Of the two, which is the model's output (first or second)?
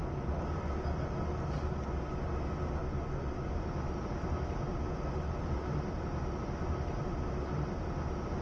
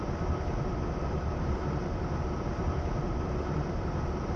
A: second